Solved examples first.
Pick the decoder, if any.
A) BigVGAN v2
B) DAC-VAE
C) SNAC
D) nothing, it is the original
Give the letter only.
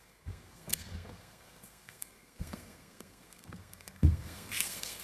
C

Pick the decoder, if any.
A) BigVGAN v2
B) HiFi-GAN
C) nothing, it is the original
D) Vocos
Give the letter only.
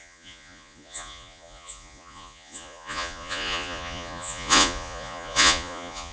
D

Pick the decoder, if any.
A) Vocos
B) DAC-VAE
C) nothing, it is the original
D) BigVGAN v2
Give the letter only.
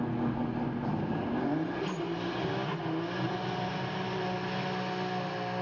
C